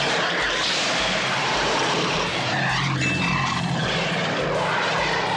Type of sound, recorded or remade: remade